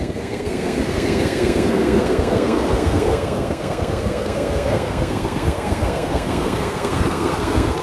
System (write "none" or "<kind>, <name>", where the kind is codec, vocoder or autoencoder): codec, SNAC